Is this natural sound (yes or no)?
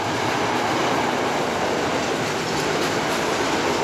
yes